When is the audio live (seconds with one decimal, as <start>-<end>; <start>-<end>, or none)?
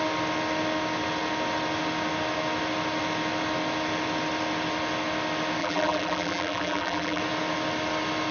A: 0.0-5.6; 7.2-8.3